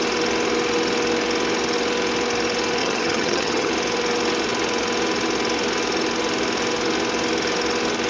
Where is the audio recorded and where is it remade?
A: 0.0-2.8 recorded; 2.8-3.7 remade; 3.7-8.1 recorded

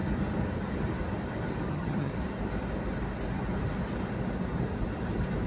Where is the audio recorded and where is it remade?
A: 0.0-1.7 recorded; 1.7-2.1 remade; 2.1-5.5 recorded